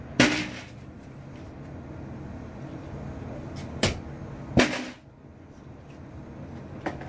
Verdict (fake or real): real